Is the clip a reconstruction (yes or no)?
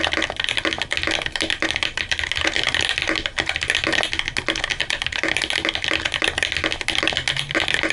no